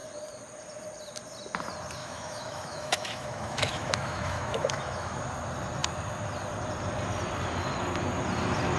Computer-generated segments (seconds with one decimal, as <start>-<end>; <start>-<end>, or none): 2.0-5.2